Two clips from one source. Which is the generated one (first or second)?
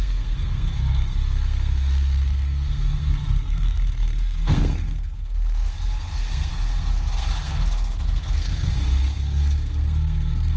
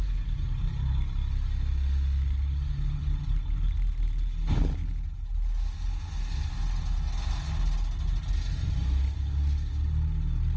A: first